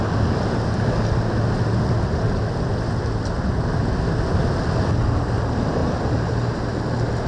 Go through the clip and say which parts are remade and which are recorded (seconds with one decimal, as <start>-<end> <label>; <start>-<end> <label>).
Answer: 0.0-7.3 recorded